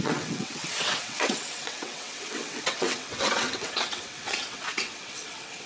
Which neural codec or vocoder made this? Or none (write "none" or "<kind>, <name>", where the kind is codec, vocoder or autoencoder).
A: vocoder, WaveNeXt